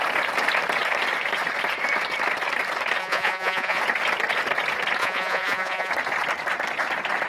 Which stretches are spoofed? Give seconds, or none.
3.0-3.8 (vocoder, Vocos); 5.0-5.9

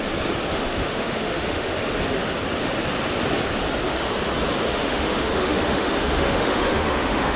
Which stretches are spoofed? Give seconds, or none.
0.5-1.8 (autoencoder, DAC-VAE); 4.7-7.4

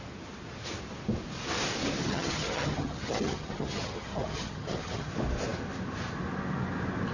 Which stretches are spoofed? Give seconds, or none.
2.0-5.1 (vocoder, HiFi-GAN)

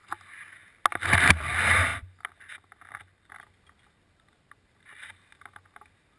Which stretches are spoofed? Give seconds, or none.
none

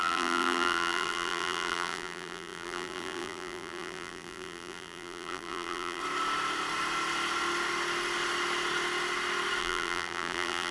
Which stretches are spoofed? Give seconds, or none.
0.0-6.0 (vocoder, BigVGAN v2); 9.6-10.7

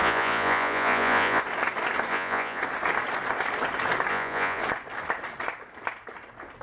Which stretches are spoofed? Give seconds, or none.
0.0-1.4 (vocoder, Vocos); 2.1-2.6; 4.1-4.6

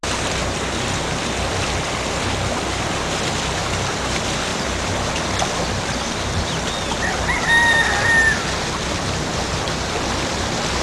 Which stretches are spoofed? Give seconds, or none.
4.5-5.2 (vocoder, BigVGAN v2)

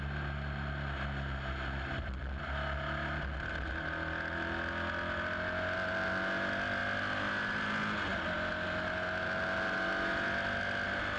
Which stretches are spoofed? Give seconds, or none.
none